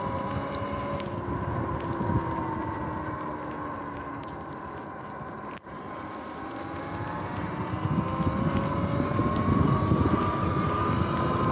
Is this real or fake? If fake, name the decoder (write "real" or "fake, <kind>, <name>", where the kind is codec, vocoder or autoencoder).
real